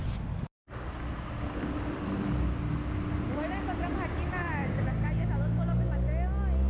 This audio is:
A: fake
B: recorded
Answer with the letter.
B